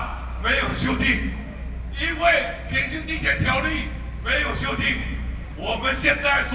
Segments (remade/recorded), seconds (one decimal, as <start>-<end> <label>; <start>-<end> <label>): 0.0-5.0 recorded; 5.0-6.1 remade; 6.1-6.5 recorded